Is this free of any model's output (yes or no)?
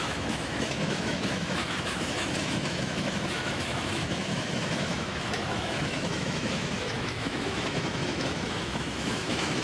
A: no